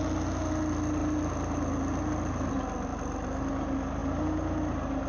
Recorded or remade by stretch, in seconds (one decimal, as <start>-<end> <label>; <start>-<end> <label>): 0.0-5.1 recorded